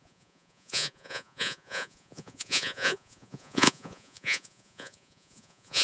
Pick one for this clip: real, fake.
fake